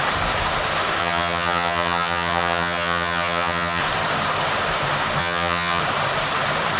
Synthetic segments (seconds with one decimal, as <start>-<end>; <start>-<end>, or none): 1.0-3.8; 5.2-5.8